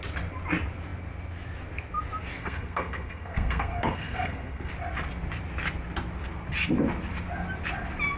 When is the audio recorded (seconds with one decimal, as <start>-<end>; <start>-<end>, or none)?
0.0-2.4; 4.7-8.2